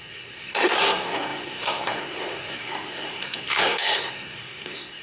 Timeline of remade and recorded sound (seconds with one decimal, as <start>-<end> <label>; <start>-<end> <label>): 0.0-5.0 remade